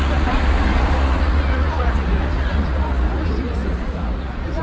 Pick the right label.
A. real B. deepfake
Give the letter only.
B